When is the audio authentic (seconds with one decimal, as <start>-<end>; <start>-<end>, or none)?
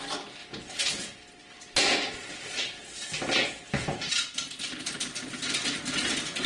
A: 0.0-6.5